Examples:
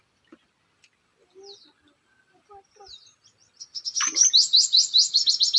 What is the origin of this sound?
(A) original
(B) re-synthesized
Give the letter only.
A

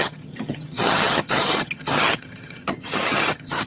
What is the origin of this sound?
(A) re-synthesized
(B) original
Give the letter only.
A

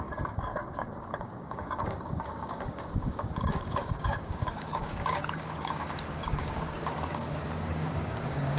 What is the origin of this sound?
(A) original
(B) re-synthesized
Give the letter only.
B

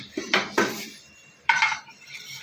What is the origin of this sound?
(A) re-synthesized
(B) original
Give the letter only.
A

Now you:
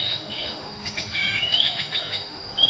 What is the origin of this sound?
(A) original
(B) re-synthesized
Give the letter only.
B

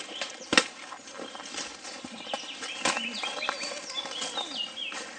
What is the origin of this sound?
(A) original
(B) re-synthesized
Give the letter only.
A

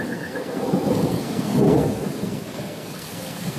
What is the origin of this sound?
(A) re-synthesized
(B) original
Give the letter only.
A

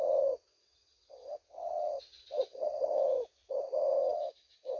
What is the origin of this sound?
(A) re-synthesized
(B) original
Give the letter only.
A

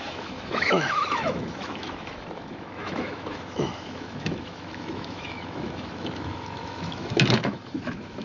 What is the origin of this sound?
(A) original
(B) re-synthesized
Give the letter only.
B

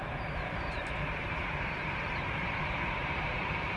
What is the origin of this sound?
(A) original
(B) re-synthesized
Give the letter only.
B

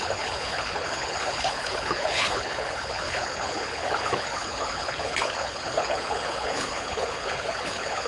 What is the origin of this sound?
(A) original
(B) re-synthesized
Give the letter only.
B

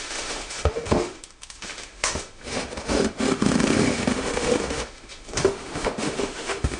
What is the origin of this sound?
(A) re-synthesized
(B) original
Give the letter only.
A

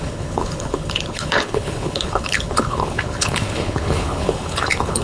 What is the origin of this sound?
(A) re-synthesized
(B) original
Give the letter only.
A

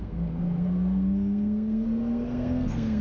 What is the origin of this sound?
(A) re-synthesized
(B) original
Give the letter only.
A